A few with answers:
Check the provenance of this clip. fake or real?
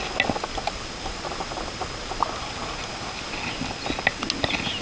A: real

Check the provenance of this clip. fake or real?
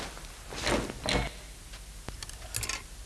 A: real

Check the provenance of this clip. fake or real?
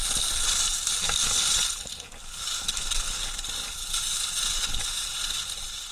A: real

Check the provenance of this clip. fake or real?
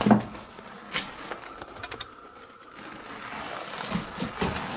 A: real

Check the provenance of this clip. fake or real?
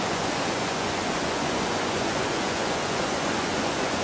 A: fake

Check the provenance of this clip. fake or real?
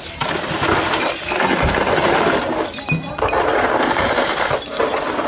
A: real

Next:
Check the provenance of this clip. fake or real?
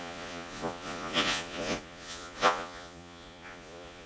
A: fake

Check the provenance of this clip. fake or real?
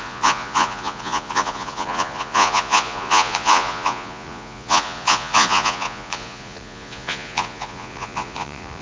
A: fake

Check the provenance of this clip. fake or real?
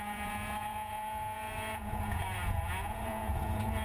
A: fake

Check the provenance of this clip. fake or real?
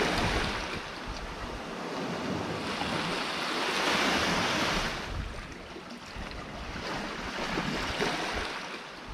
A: real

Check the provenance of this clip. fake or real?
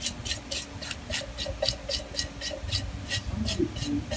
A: real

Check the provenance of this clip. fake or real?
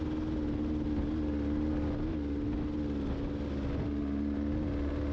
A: real